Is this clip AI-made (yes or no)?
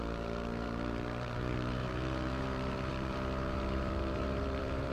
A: yes